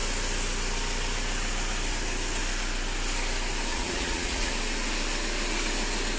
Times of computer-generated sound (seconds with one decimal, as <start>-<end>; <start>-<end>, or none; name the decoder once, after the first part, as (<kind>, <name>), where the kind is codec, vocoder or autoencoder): 3.7-4.5 (vocoder, Vocos)